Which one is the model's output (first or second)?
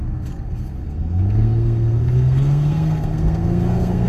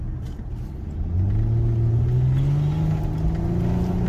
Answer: first